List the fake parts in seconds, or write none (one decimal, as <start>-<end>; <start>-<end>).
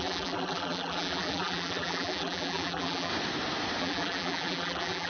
0.0-3.1; 3.8-5.1